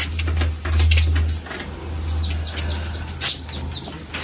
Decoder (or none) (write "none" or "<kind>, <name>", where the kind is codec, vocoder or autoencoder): none